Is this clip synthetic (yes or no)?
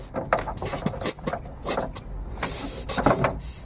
no